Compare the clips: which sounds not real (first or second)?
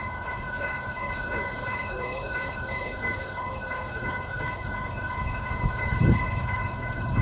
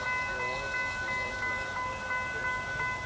first